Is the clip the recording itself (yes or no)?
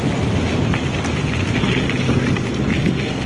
yes